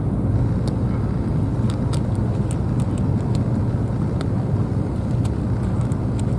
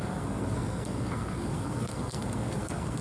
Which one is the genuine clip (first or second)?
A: first